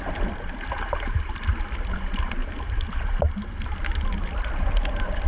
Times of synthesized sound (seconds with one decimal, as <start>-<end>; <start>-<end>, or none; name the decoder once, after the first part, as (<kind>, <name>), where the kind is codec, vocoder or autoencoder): 0.0-2.4 (vocoder, BigVGAN v2); 3.5-5.3